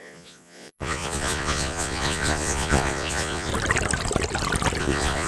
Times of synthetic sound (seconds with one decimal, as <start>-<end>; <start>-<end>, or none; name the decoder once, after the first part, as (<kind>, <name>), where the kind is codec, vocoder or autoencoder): 0.0-3.5 (vocoder, Vocos); 4.8-5.3